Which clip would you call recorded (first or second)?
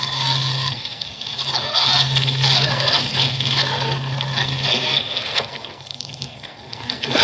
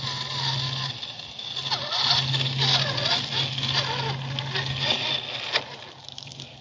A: second